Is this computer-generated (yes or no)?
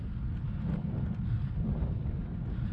no